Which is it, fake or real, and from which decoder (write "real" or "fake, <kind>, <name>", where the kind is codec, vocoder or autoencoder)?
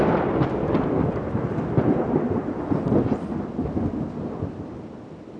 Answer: real